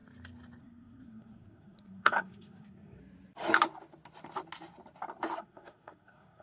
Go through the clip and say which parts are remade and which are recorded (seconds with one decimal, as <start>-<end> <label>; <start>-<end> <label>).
0.0-0.6 recorded; 0.6-3.0 remade; 3.0-5.4 recorded; 5.4-6.4 remade